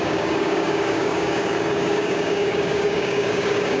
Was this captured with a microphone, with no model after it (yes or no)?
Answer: no